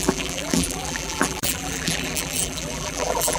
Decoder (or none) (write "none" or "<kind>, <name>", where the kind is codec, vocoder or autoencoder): vocoder, BigVGAN v2